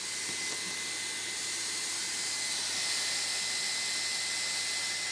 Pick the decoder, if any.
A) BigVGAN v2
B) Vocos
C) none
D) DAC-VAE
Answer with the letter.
C